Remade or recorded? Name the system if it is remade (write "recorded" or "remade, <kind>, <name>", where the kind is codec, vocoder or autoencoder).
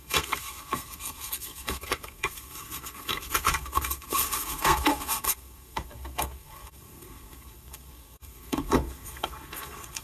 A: remade, codec, SNAC